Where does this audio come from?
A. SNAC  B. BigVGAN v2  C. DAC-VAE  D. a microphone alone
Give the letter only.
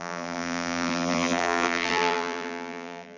B